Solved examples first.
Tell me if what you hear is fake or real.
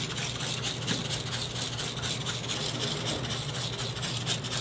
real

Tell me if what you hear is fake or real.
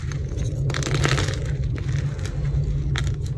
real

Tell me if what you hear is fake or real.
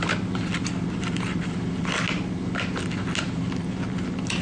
real